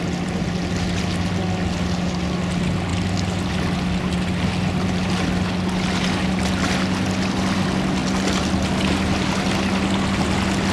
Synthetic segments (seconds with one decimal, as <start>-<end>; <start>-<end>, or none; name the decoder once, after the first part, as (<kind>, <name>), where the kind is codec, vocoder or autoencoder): none